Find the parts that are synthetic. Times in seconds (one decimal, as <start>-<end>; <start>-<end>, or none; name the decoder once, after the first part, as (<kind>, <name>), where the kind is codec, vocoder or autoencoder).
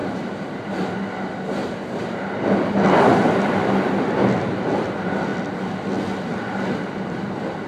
0.0-0.7 (vocoder, BigVGAN v2); 1.6-2.3